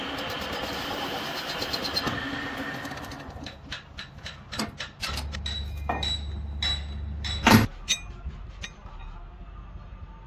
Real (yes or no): yes